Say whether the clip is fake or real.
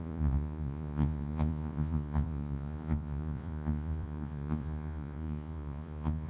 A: fake